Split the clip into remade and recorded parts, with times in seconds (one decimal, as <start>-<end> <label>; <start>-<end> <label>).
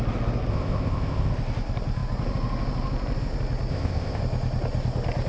0.0-0.5 recorded; 0.5-1.3 remade; 1.3-3.7 recorded; 3.7-4.2 remade; 4.2-5.3 recorded